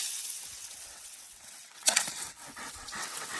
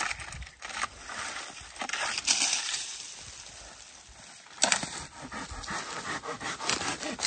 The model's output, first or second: first